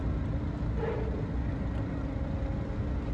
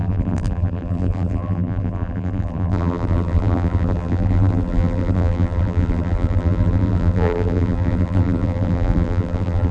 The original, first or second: first